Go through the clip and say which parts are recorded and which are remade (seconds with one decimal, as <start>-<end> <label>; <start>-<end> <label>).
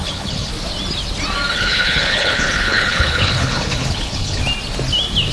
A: 0.0-0.5 remade; 0.5-1.5 recorded; 1.5-4.4 remade; 4.4-5.3 recorded